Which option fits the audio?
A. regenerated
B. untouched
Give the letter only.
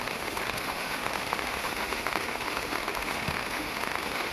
A